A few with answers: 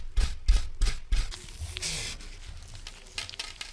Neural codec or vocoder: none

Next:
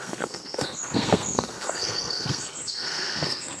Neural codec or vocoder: codec, SNAC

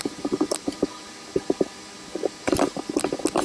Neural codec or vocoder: none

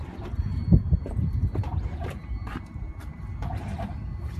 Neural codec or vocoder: vocoder, BigVGAN v2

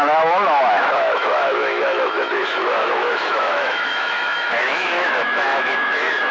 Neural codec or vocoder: autoencoder, DAC-VAE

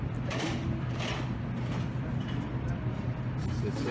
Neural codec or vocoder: vocoder, BigVGAN v2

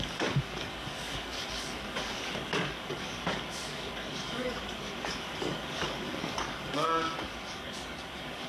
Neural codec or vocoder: codec, DAC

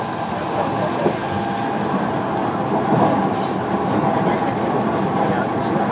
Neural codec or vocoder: none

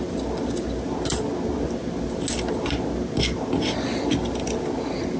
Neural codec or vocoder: none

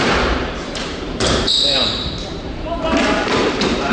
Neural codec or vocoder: vocoder, BigVGAN v2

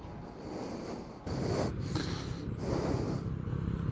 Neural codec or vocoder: none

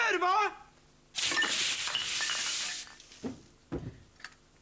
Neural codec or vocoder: none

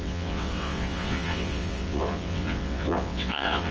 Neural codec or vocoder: vocoder, WaveNeXt